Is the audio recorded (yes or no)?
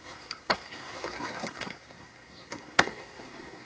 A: no